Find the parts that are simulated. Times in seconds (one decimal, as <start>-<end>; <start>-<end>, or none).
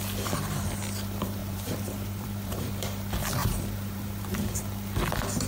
1.4-2.6; 3.4-4.6